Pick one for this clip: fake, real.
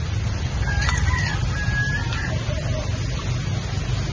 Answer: real